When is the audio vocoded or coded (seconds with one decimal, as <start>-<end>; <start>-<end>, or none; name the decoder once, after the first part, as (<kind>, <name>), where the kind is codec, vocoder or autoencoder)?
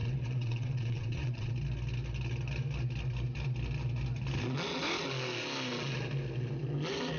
0.0-1.5 (vocoder, WaveNeXt)